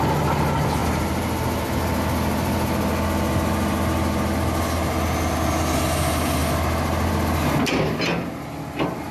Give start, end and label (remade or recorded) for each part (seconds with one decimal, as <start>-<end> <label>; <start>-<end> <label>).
0.0-9.1 recorded